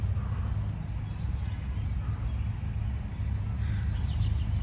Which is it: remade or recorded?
recorded